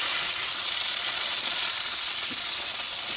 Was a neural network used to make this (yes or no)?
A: yes